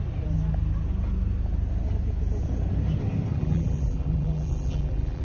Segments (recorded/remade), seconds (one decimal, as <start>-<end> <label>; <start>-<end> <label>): 0.0-3.3 recorded; 3.3-5.2 remade